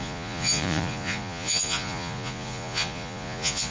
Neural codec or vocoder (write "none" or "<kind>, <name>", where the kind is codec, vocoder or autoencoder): vocoder, Vocos